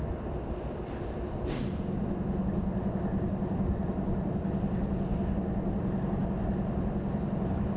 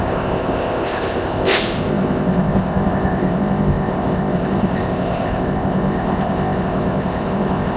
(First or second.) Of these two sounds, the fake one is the second